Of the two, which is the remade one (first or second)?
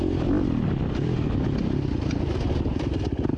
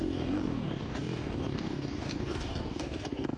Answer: second